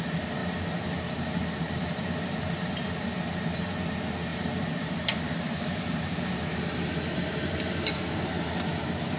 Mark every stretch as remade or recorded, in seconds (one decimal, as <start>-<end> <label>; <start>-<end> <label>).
0.0-0.4 recorded; 0.4-3.8 remade; 3.8-4.3 recorded; 4.3-9.2 remade